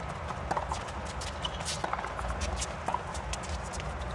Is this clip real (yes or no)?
yes